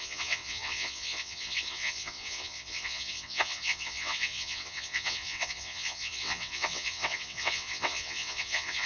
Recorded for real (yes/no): no